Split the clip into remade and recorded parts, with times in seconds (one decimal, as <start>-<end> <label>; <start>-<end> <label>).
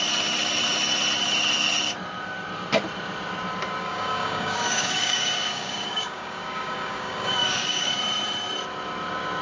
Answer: 0.0-3.8 recorded; 3.8-8.0 remade; 8.0-9.4 recorded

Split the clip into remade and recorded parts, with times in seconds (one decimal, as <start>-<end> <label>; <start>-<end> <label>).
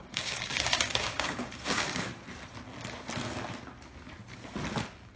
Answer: 0.0-2.1 remade; 2.1-5.2 recorded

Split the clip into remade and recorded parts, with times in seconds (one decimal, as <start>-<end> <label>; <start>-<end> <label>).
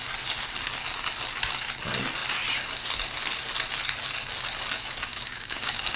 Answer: 0.0-5.1 recorded; 5.1-6.0 remade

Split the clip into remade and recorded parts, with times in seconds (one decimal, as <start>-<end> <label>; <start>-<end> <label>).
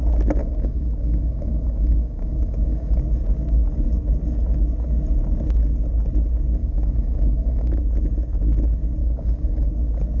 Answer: 0.0-0.4 recorded; 0.4-3.0 remade; 3.0-6.6 recorded; 6.6-7.8 remade; 7.8-9.0 recorded; 9.0-9.7 remade; 9.7-10.2 recorded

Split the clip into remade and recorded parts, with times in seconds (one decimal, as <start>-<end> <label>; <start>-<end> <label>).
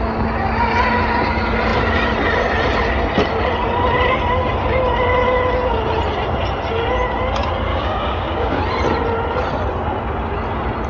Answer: 0.0-7.7 recorded; 7.7-8.6 remade; 8.6-10.9 recorded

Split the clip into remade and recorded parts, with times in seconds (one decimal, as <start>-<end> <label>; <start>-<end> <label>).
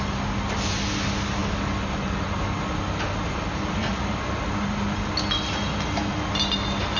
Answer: 0.0-7.0 recorded